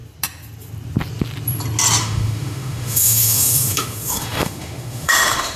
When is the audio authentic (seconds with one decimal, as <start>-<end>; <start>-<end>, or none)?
0.0-2.0